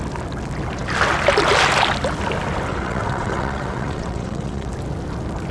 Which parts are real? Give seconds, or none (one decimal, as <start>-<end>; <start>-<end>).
0.0-2.7; 4.7-5.5